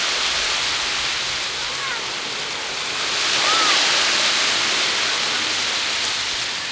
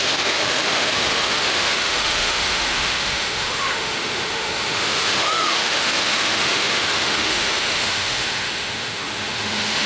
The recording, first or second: first